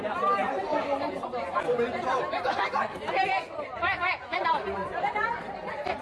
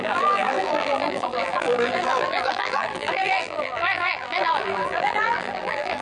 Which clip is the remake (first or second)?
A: second